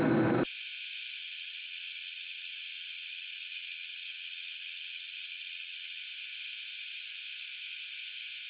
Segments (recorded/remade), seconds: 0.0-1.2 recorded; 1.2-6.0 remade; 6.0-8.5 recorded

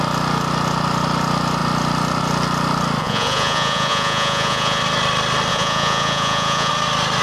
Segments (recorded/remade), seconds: 0.0-3.0 recorded; 3.0-4.8 remade; 4.8-5.5 recorded; 5.5-6.7 remade; 6.7-7.2 recorded

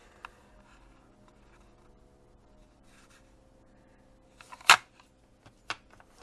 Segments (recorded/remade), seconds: 0.0-6.2 recorded

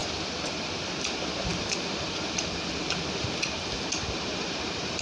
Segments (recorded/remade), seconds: 0.0-5.0 recorded

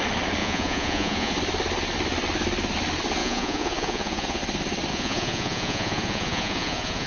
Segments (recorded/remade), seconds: 0.0-0.4 recorded; 0.4-1.3 remade; 1.3-3.2 recorded; 3.2-4.4 remade; 4.4-4.9 recorded; 4.9-7.1 remade

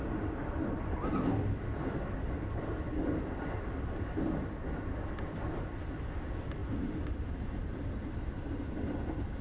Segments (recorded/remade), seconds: 0.0-9.4 recorded

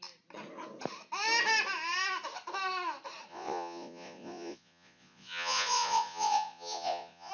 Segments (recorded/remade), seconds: 0.0-3.3 recorded; 3.3-7.3 remade

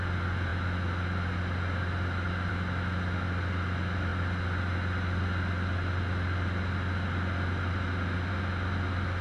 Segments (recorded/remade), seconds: 0.0-9.2 recorded